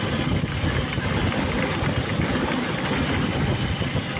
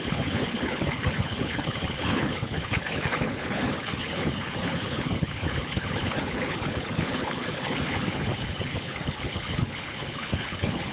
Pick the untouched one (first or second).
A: first